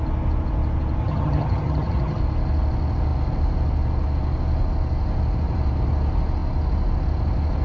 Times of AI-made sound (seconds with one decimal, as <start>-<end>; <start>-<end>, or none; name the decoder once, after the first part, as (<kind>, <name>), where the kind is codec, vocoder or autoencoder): 1.0-2.2 (vocoder, HiFi-GAN)

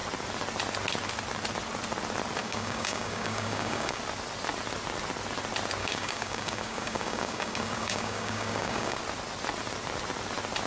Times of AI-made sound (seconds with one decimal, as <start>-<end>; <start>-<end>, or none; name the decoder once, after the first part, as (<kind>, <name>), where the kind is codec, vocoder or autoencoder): 2.4-4.0 (codec, DAC); 5.8-9.0

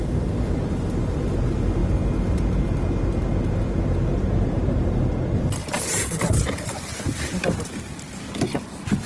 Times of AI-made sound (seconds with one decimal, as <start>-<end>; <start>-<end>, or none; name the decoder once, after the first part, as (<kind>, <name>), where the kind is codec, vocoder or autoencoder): 3.3-5.0 (vocoder, BigVGAN v2); 5.6-8.2